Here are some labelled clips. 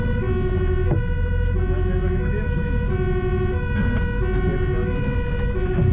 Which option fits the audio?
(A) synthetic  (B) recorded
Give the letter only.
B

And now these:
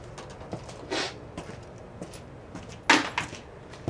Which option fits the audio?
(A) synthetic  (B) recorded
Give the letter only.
B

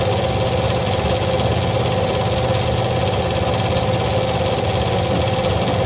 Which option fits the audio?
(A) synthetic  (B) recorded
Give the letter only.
B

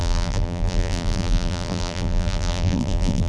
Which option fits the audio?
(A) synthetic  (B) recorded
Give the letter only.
A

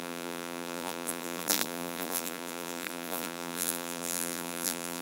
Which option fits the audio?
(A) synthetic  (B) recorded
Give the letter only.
A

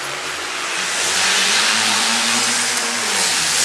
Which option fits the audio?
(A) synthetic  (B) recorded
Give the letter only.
A